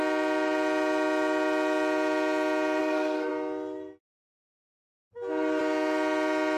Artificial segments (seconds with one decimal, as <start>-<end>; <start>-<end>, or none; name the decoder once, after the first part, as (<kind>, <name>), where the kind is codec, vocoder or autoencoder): 2.8-3.3 (codec, SNAC)